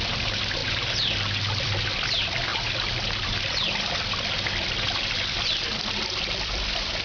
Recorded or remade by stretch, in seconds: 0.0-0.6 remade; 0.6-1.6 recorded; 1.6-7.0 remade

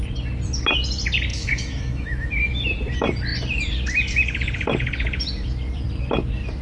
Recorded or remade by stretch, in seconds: 0.0-1.3 recorded; 1.3-2.3 remade; 2.3-6.6 recorded